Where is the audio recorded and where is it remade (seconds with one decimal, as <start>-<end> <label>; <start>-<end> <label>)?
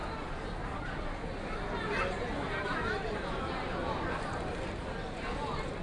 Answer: 0.0-5.8 recorded